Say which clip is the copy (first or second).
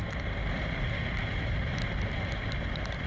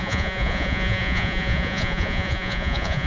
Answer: second